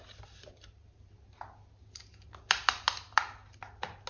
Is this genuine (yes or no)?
yes